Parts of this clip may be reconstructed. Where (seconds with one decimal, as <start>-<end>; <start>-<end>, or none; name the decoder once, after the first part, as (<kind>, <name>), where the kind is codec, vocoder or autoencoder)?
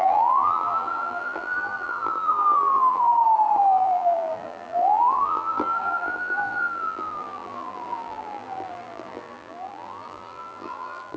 0.0-3.1 (vocoder, BigVGAN v2); 3.6-11.2